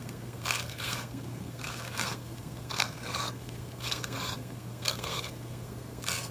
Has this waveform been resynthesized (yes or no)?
yes